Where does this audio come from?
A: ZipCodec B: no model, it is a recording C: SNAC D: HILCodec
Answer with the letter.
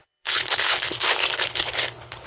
D